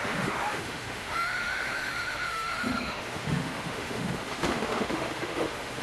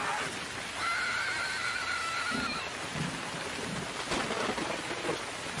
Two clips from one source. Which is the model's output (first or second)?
first